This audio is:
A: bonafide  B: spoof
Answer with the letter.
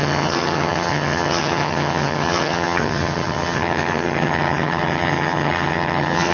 B